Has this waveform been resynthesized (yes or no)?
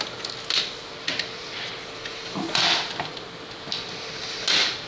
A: no